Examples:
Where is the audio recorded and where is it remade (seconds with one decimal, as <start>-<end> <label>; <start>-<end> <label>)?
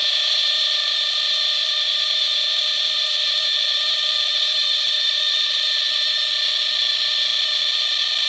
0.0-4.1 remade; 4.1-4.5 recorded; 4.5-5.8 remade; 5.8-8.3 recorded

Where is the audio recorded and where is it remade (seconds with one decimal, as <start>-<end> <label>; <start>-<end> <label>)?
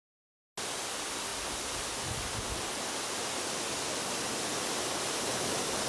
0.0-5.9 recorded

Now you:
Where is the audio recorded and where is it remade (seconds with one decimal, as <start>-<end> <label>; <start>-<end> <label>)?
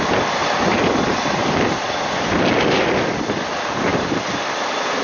0.0-5.0 recorded